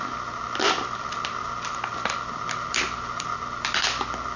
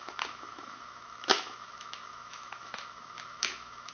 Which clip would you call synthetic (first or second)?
second